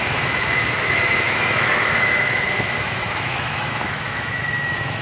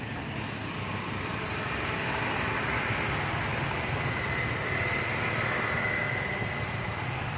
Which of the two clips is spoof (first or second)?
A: first